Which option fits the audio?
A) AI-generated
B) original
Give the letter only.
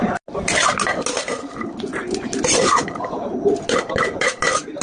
B